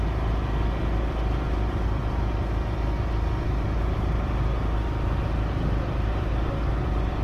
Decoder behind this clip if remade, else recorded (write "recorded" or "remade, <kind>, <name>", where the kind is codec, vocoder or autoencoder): recorded